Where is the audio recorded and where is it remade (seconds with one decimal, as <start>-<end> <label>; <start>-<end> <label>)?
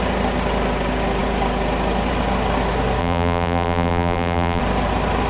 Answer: 0.0-3.0 recorded; 3.0-4.6 remade; 4.6-5.3 recorded